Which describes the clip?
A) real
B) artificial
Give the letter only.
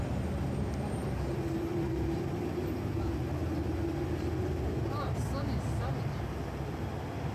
A